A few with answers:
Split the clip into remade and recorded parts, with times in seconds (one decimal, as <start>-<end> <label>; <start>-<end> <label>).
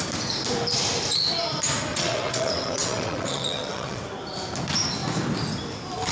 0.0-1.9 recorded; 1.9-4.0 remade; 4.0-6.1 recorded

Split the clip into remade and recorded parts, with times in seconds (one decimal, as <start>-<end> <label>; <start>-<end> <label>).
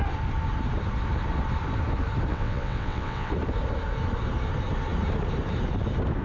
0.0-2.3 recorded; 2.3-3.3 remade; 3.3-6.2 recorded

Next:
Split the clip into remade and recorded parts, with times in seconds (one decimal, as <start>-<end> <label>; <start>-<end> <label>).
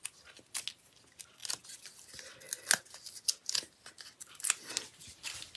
0.0-5.6 recorded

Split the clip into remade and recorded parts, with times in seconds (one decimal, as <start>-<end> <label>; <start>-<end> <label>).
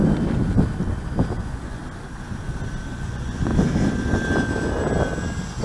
0.0-1.3 recorded; 1.3-1.8 remade; 1.8-2.9 recorded; 2.9-3.5 remade; 3.5-5.6 recorded